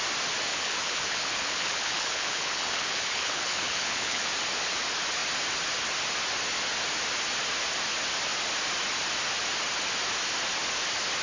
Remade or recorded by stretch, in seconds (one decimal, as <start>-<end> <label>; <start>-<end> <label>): 0.0-0.5 recorded; 0.5-4.3 remade; 4.3-11.2 recorded